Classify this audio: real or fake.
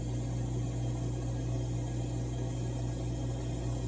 real